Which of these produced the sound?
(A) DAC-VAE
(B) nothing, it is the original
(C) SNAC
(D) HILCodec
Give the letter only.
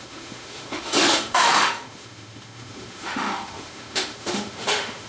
A